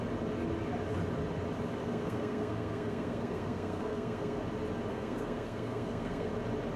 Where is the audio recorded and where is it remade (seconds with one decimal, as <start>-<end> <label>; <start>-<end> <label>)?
0.0-1.8 recorded; 1.8-4.4 remade; 4.4-4.9 recorded; 4.9-6.3 remade; 6.3-6.8 recorded